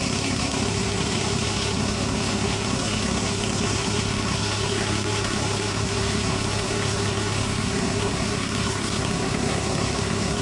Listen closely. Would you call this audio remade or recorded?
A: remade